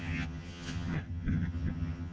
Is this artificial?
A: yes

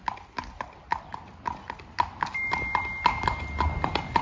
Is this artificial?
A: no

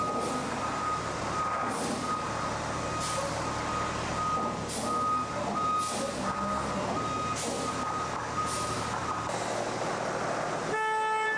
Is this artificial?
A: no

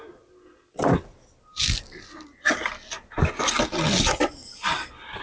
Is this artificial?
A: no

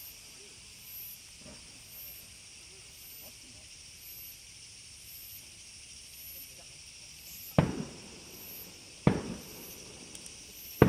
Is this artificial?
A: no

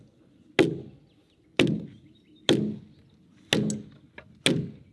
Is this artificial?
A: no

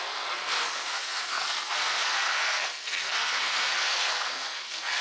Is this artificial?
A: yes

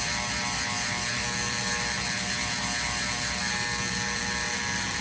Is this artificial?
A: no